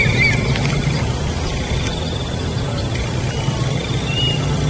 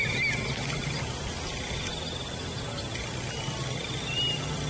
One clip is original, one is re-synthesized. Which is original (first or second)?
second